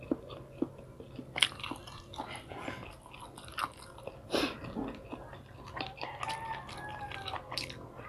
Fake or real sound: real